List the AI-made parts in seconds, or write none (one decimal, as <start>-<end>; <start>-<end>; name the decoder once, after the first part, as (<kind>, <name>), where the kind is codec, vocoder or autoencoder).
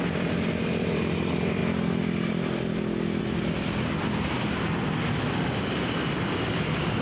0.0-1.6 (vocoder, BigVGAN v2); 3.2-7.0